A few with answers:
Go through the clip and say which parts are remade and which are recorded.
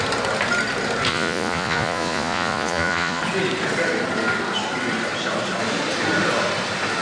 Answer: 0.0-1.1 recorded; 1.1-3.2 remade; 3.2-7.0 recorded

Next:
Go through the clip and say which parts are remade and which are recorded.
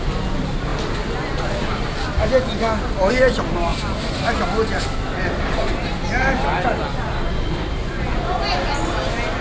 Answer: 0.0-7.8 recorded; 7.8-8.4 remade; 8.4-9.4 recorded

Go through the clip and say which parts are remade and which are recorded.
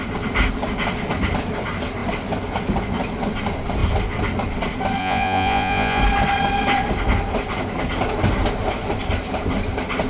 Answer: 0.0-5.0 recorded; 5.0-6.0 remade; 6.0-10.1 recorded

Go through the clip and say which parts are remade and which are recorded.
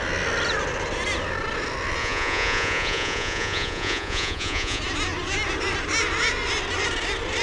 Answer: 0.0-2.0 recorded; 2.0-4.8 remade; 4.8-7.4 recorded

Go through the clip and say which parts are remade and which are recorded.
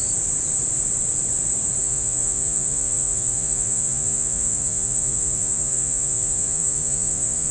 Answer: 0.0-1.8 recorded; 1.8-7.5 remade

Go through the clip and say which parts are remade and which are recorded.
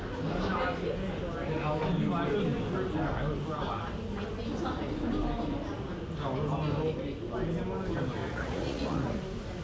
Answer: 0.0-8.2 recorded; 8.2-9.2 remade; 9.2-9.6 recorded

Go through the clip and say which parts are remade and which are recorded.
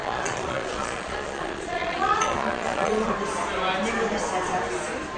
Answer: 0.0-3.1 remade; 3.1-5.2 recorded